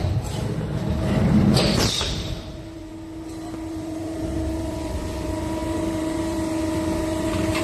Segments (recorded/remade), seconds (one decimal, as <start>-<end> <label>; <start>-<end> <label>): 0.0-2.9 remade; 2.9-3.7 recorded; 3.7-7.6 remade